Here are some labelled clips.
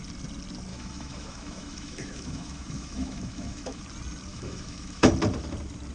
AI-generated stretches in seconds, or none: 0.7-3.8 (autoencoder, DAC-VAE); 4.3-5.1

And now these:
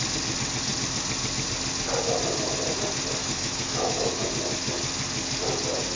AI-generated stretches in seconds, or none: 3.2-4.3 (autoencoder, DAC-VAE)